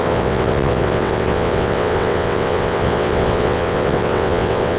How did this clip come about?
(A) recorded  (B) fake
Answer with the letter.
B